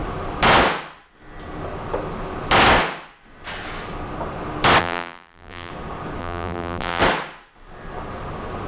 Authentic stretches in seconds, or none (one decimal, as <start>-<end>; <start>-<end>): 0.0-4.8; 5.7-6.2; 7.0-8.7